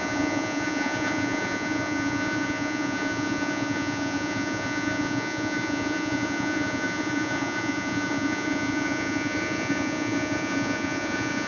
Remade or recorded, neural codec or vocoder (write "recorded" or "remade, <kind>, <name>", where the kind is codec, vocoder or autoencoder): remade, vocoder, Vocos